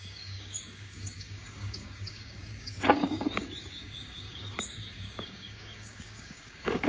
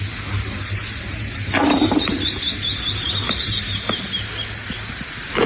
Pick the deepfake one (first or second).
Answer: first